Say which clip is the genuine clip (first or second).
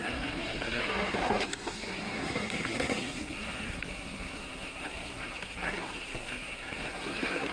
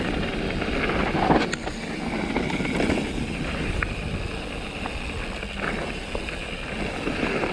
second